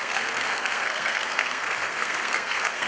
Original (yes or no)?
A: no